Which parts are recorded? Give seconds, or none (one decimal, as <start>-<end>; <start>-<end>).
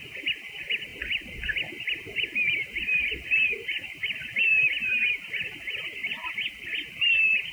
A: 0.0-7.5